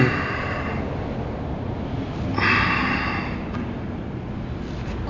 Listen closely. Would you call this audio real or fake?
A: real